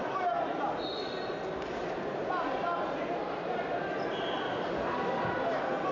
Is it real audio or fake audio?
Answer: real